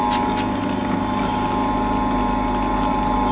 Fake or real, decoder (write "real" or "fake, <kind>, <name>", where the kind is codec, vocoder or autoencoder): real